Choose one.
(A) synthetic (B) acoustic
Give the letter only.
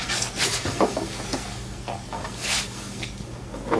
A